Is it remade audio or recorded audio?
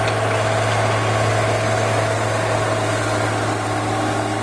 recorded